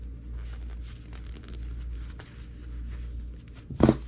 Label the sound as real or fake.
real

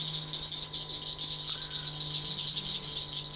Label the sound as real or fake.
real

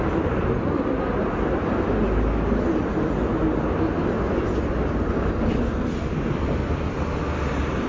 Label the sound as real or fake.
real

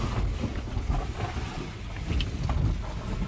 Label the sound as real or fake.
real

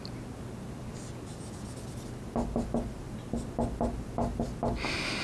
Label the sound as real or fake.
real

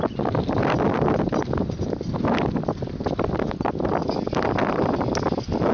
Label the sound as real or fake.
real